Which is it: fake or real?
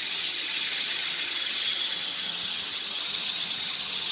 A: fake